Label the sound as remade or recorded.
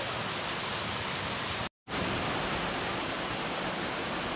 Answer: recorded